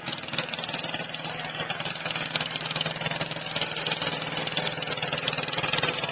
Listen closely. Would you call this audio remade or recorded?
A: recorded